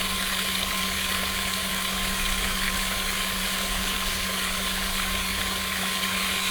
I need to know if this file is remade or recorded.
remade